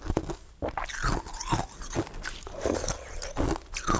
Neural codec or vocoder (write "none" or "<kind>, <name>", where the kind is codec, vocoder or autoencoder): none